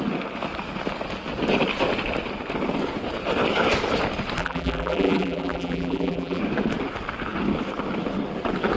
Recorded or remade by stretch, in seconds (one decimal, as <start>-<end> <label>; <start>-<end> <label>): 0.0-4.4 recorded; 4.4-6.4 remade; 6.4-8.8 recorded